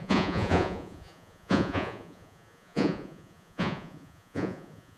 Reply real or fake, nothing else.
fake